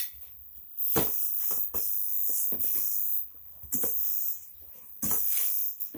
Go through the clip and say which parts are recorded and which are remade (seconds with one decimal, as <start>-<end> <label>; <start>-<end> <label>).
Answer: 0.0-4.2 recorded; 4.2-4.9 remade; 4.9-6.0 recorded